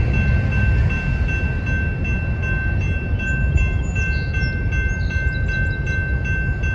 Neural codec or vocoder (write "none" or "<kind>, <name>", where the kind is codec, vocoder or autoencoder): none